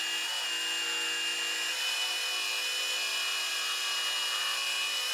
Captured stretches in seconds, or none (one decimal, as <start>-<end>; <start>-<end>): 0.0-3.1; 3.8-4.4